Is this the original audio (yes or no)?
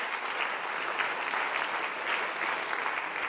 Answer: yes